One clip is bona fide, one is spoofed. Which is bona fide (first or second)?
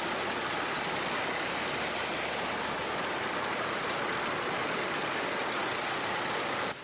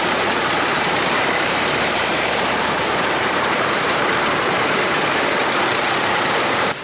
first